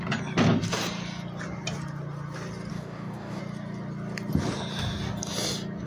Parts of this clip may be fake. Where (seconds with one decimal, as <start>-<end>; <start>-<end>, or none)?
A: 2.7-3.4